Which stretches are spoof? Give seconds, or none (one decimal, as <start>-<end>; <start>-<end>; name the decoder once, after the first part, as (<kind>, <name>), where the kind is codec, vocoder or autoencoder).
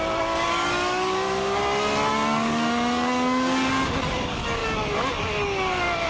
0.0-1.6 (codec, DAC); 2.1-6.1